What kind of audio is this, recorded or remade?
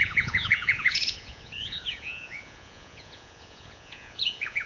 remade